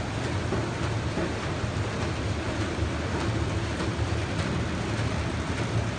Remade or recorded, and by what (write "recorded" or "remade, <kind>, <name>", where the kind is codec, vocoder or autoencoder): recorded